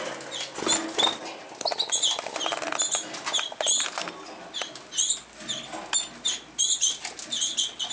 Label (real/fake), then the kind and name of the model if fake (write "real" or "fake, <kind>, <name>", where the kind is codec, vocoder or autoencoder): real